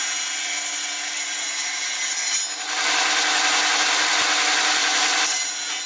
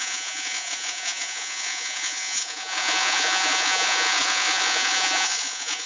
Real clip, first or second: first